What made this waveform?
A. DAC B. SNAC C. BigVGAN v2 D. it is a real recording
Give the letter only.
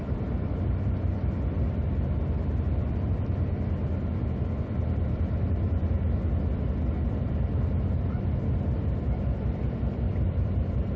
C